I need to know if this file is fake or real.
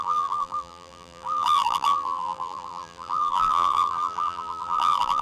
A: fake